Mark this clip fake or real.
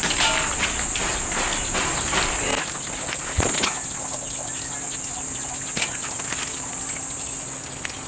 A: real